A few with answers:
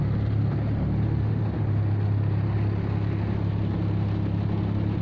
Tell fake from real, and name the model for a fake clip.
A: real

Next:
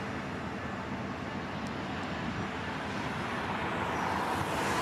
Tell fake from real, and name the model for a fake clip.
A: real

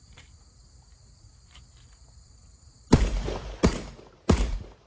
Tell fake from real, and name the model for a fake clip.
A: fake, vocoder, BigVGAN v2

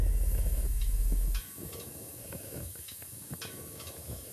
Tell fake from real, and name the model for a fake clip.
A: fake, autoencoder, DAC-VAE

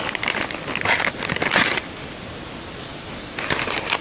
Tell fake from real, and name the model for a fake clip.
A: fake, vocoder, BigVGAN v2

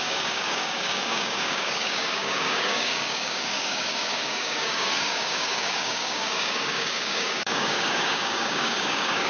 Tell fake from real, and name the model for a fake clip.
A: fake, codec, DAC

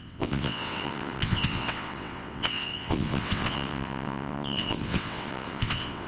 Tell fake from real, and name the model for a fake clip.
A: fake, vocoder, WaveNeXt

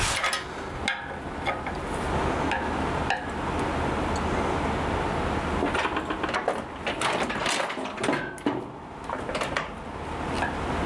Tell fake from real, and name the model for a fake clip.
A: real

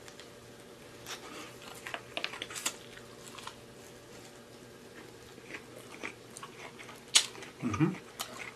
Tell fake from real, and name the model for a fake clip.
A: real